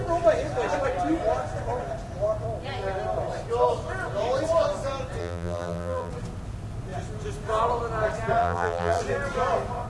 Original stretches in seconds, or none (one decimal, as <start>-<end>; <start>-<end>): 0.0-5.2; 6.1-8.4; 9.0-9.9